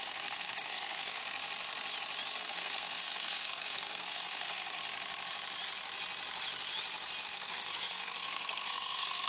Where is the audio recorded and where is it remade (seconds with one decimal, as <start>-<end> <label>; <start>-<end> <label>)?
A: 0.0-1.2 remade; 1.2-2.4 recorded; 2.4-4.8 remade; 4.8-7.2 recorded; 7.2-9.3 remade